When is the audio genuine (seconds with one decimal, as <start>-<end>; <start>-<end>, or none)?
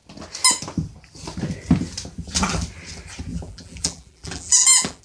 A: 0.0-3.3